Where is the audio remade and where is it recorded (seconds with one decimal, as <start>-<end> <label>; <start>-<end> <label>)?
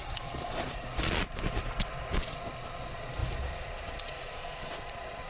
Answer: 0.0-5.3 remade